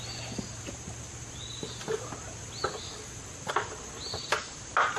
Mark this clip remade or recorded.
recorded